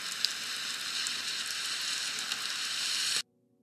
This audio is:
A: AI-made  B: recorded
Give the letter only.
B